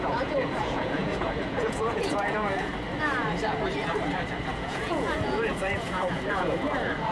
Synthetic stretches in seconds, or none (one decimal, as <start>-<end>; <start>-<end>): 0.0-2.7; 4.5-7.1